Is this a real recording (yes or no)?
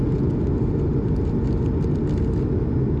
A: yes